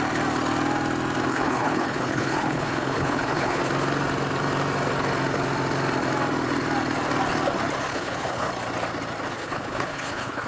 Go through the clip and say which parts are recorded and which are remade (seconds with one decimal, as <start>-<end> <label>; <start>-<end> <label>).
0.0-1.3 recorded; 1.3-3.6 remade; 3.6-7.9 recorded; 7.9-8.5 remade; 8.5-9.3 recorded; 9.3-10.5 remade